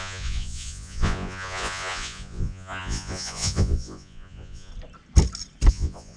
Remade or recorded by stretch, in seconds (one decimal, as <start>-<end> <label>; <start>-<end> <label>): 0.0-4.7 remade; 4.7-5.7 recorded; 5.7-6.2 remade